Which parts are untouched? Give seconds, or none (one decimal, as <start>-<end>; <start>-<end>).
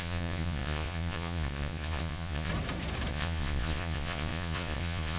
2.5-3.1